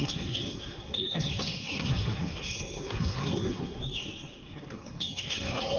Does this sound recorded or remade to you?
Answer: remade